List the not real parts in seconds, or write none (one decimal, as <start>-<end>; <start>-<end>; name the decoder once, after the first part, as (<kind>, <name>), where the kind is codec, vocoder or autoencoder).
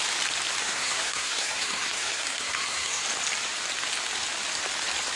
0.6-3.0 (codec, SNAC)